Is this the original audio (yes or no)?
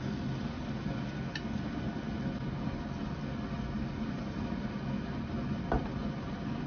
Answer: yes